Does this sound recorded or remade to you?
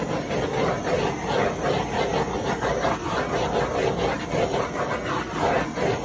recorded